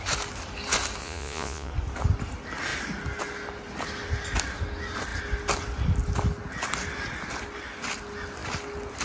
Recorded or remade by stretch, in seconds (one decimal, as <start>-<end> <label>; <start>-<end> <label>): 0.0-1.0 recorded; 1.0-1.7 remade; 1.7-9.0 recorded

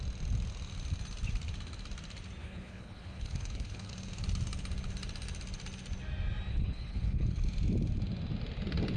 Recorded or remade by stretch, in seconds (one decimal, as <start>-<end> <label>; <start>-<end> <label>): 0.0-2.4 recorded; 2.4-3.9 remade; 3.9-6.5 recorded; 6.5-7.4 remade; 7.4-9.0 recorded

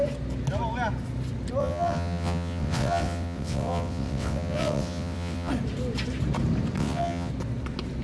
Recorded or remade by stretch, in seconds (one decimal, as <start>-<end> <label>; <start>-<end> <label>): 0.0-1.6 recorded; 1.6-5.5 remade; 5.5-6.8 recorded; 6.8-7.3 remade; 7.3-8.0 recorded

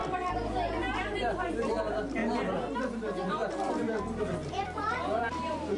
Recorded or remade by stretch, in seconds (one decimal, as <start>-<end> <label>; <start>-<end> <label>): 0.0-0.8 recorded; 0.8-2.2 remade; 2.2-5.2 recorded; 5.2-5.8 remade

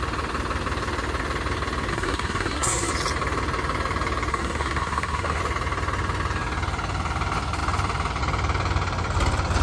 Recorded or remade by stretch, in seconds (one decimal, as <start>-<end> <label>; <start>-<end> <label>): 0.0-1.9 recorded; 1.9-2.9 remade; 2.9-4.3 recorded; 4.3-5.4 remade; 5.4-9.6 recorded